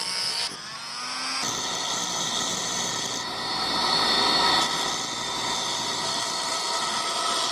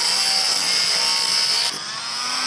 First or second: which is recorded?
first